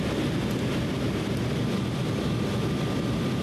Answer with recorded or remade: recorded